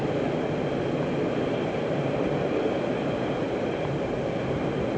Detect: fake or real real